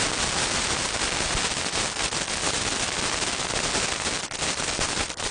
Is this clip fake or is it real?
real